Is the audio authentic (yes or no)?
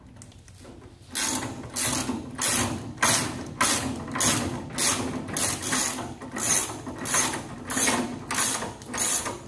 yes